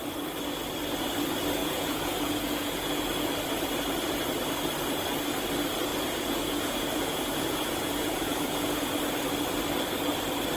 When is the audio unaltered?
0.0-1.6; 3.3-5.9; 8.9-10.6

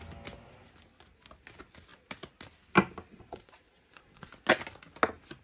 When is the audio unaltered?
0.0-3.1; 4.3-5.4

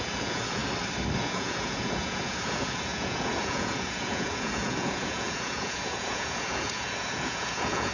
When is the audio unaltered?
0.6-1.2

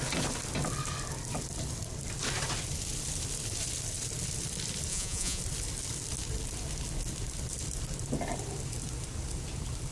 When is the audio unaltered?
0.0-4.9; 5.4-9.9